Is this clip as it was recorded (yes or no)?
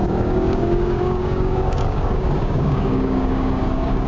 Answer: no